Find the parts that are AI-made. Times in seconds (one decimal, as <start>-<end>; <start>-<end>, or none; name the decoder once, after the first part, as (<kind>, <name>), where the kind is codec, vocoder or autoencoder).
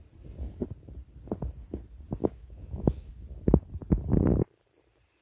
2.2-3.1 (autoencoder, DAC-VAE)